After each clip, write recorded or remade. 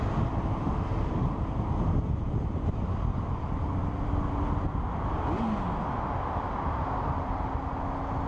recorded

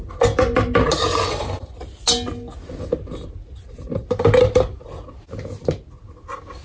recorded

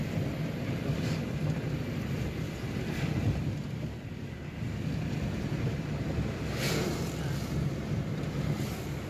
recorded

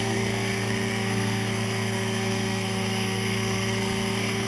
remade